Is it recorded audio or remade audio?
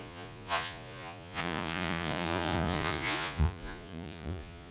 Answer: remade